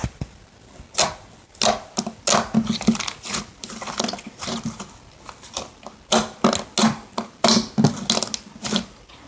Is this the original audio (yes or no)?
yes